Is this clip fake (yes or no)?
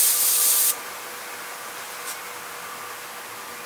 no